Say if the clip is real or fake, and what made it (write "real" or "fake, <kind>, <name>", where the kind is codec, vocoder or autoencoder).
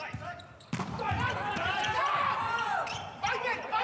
fake, vocoder, BigVGAN v2